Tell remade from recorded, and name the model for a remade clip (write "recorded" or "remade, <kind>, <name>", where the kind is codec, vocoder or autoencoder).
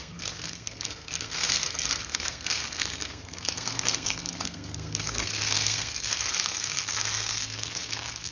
remade, codec, SNAC